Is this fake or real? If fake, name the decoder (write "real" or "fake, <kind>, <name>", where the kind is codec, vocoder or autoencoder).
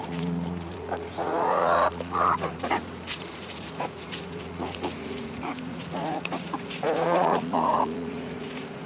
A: fake, vocoder, Vocos